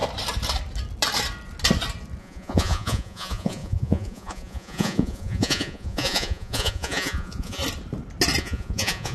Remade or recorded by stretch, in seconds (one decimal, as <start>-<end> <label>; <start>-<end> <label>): 0.0-2.2 recorded; 2.2-7.6 remade; 7.6-8.4 recorded; 8.4-9.1 remade